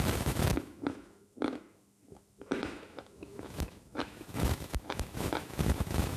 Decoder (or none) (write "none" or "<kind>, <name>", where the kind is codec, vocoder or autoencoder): autoencoder, DAC-VAE